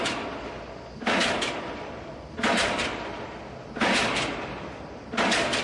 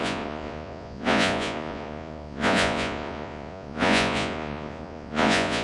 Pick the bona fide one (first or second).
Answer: first